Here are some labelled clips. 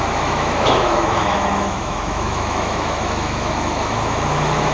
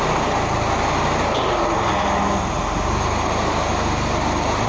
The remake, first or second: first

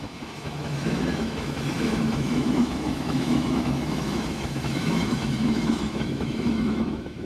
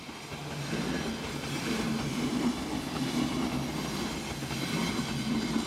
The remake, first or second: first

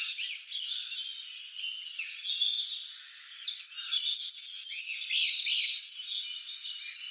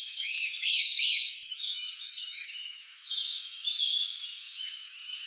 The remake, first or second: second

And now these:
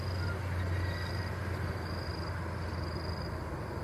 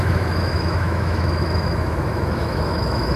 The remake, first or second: second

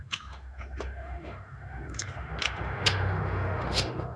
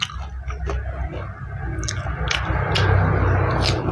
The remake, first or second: first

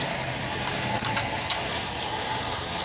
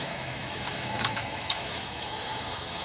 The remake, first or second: second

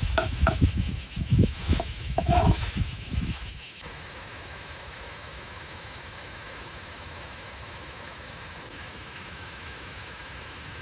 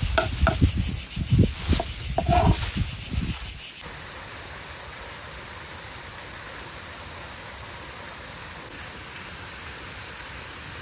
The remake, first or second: first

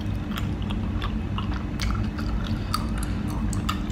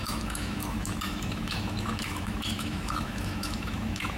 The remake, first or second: second